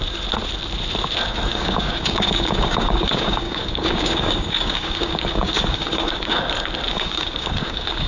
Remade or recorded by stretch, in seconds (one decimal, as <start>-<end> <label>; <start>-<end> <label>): 0.0-1.5 recorded; 1.5-6.4 remade; 6.4-6.9 recorded; 6.9-8.1 remade